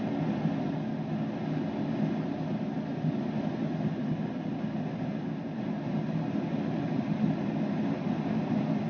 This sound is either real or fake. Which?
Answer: real